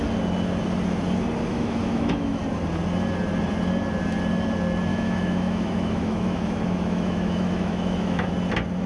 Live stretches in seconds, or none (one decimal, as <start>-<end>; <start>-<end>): 0.0-1.5; 2.4-4.9; 8.3-8.9